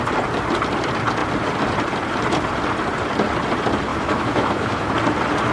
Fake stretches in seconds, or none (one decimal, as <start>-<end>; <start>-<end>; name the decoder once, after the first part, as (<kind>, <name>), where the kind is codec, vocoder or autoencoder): 3.9-4.9 (autoencoder, DAC-VAE)